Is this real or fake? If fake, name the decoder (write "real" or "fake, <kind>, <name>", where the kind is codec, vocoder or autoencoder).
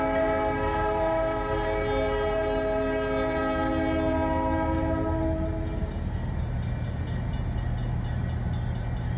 real